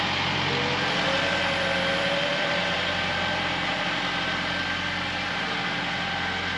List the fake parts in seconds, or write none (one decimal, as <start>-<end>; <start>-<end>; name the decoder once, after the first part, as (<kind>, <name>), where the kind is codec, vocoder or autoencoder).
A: 2.3-3.8 (vocoder, BigVGAN v2)